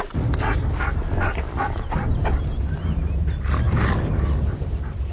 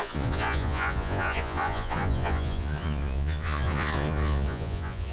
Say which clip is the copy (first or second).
second